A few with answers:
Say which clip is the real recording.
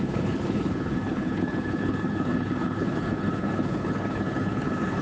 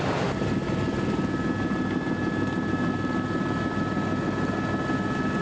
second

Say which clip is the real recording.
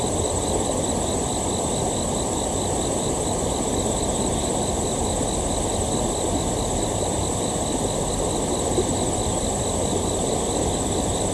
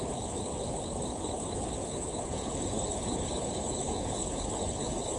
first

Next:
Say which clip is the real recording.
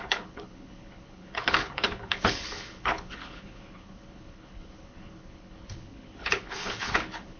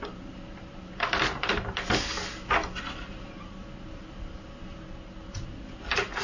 second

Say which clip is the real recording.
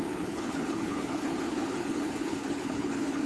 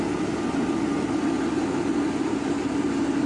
second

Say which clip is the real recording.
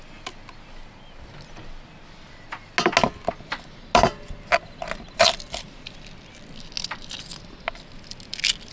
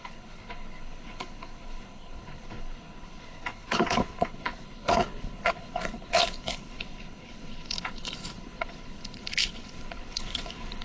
first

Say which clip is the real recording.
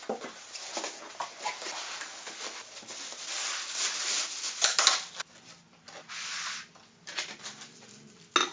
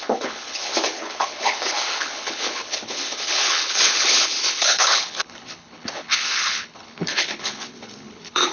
first